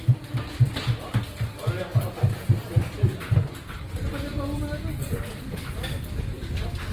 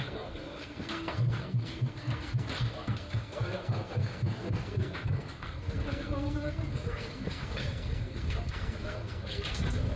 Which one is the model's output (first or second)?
second